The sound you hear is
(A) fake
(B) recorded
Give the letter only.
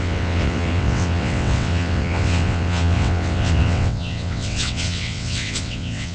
A